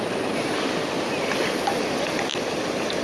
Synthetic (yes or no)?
no